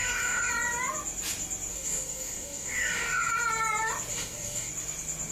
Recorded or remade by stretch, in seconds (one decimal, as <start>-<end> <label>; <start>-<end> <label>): 0.0-0.5 remade; 0.5-1.7 recorded; 1.7-3.3 remade; 3.3-4.1 recorded; 4.1-4.7 remade; 4.7-5.3 recorded